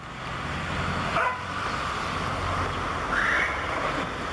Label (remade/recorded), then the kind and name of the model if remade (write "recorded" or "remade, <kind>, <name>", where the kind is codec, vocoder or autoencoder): recorded